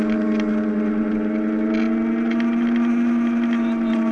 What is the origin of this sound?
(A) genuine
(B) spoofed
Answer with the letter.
A